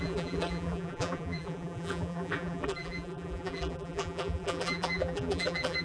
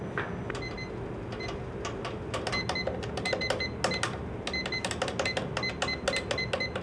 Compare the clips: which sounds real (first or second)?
second